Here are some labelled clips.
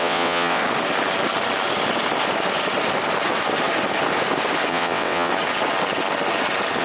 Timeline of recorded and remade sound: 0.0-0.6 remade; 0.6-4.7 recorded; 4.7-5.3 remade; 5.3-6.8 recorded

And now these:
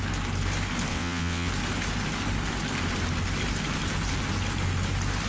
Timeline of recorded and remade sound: 0.0-0.9 recorded; 0.9-1.5 remade; 1.5-5.3 recorded

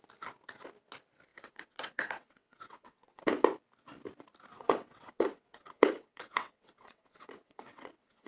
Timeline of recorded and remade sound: 0.0-1.3 recorded; 1.3-3.2 remade; 3.2-4.5 recorded; 4.5-8.3 remade

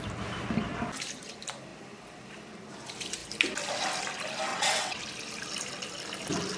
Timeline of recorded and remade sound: 0.0-4.5 recorded; 4.5-5.0 remade; 5.0-6.6 recorded